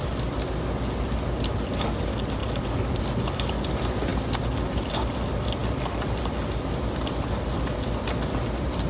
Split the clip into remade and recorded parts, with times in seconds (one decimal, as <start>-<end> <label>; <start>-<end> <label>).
0.0-8.9 recorded